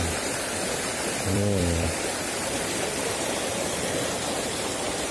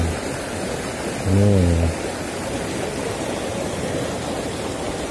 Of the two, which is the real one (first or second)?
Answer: second